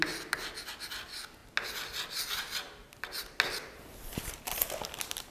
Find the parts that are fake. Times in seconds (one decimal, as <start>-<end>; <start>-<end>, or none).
none